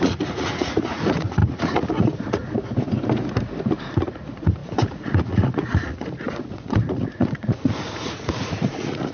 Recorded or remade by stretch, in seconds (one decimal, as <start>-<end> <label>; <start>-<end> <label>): 0.0-2.4 remade; 2.4-3.8 recorded; 3.8-9.1 remade